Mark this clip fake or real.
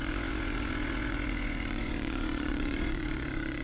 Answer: fake